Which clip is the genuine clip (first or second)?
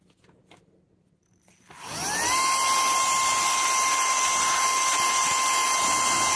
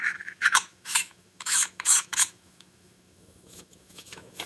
first